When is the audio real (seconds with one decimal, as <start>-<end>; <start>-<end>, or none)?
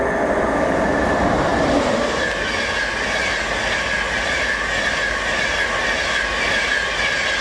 0.0-7.4